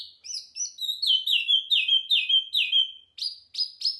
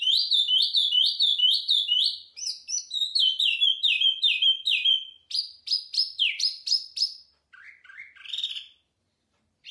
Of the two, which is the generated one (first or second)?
second